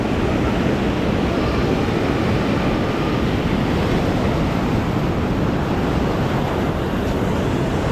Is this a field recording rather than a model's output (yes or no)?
yes